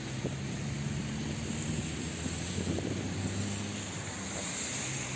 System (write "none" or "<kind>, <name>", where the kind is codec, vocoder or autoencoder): vocoder, BigVGAN v2